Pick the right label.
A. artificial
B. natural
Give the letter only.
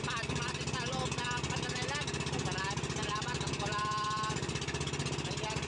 B